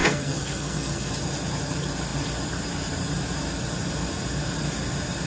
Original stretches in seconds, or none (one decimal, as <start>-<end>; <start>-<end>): 1.1-5.3